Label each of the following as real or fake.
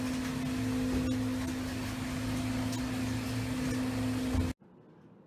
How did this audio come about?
real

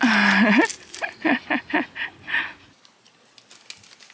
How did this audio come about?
real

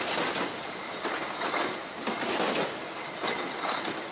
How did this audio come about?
real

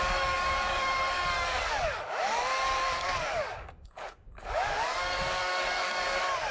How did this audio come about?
fake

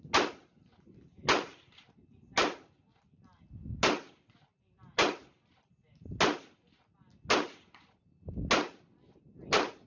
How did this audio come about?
real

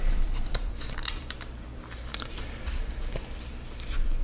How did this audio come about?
fake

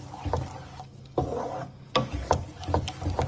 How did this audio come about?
real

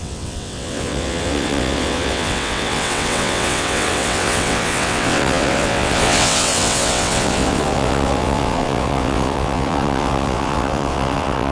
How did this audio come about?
fake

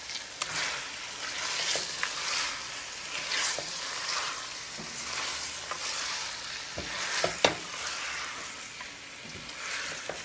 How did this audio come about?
real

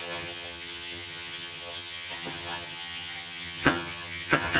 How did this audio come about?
fake